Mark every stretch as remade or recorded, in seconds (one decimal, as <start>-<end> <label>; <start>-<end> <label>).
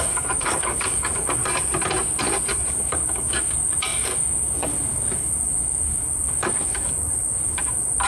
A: 0.0-1.4 remade; 1.4-2.7 recorded; 2.7-8.1 remade